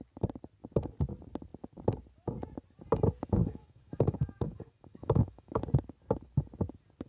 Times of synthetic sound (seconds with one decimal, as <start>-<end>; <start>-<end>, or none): 3.4-5.6